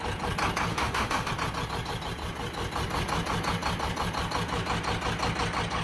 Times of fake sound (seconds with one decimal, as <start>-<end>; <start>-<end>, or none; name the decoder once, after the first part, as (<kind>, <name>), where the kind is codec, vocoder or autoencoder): 0.7-1.3 (autoencoder, DAC-VAE)